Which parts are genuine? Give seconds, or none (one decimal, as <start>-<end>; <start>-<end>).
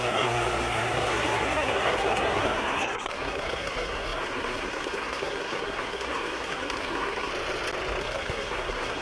7.3-8.0